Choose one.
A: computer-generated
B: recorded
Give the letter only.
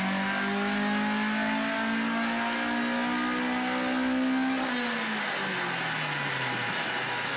B